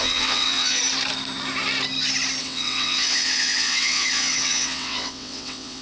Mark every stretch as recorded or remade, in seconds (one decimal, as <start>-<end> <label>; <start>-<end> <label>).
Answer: 0.0-0.8 remade; 0.8-2.4 recorded; 2.4-5.8 remade